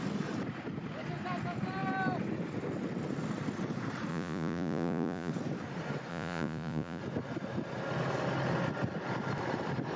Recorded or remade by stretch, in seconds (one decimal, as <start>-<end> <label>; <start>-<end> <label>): 0.0-4.1 recorded; 4.1-5.3 remade; 5.3-6.1 recorded; 6.1-7.0 remade; 7.0-10.0 recorded